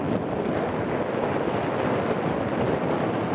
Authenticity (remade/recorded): recorded